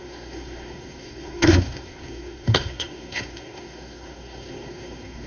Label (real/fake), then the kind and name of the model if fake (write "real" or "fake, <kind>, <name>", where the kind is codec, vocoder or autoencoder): fake, codec, SNAC